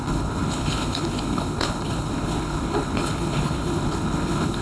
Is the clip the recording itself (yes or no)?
no